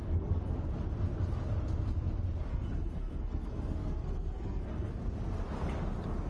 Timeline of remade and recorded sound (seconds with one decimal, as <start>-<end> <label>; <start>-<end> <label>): 0.0-0.5 remade; 0.5-2.5 recorded; 2.5-4.9 remade; 4.9-6.3 recorded